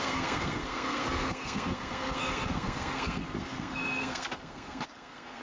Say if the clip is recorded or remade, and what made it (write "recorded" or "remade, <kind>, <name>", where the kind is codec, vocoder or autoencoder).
remade, codec, SNAC